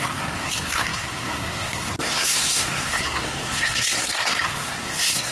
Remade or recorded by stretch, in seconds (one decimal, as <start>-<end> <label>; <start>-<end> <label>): 0.0-5.3 remade